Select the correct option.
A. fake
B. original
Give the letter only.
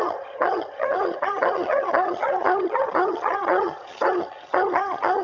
A